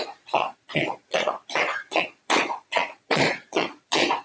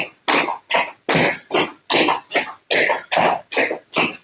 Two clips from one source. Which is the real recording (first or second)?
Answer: second